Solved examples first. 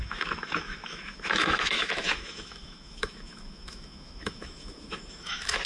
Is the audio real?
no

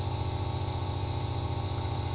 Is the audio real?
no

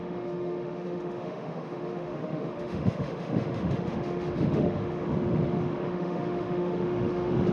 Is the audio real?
no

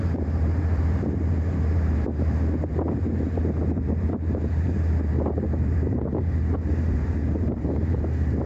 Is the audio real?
no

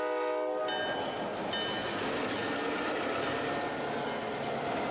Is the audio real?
yes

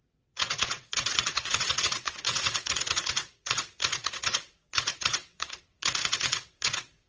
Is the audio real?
no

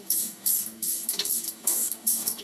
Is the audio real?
no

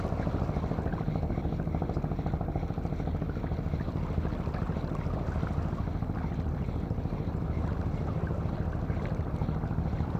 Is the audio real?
yes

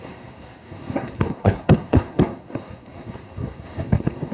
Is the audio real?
no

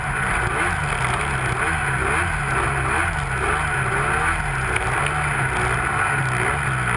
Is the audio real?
yes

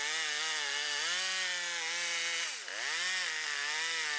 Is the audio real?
yes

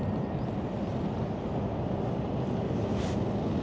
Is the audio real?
yes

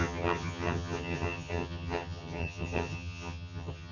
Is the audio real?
no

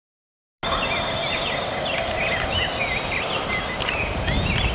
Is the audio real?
yes